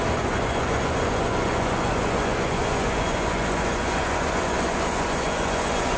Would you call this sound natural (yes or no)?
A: no